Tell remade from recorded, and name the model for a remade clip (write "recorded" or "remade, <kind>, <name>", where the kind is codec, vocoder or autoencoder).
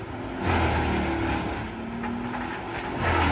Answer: recorded